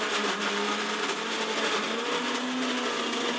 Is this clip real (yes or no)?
yes